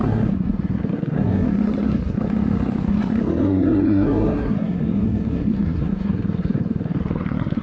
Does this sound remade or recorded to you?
remade